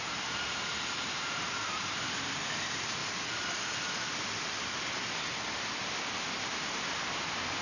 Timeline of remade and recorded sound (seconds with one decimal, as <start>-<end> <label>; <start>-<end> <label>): 0.0-3.0 remade; 3.0-6.5 recorded; 6.5-7.6 remade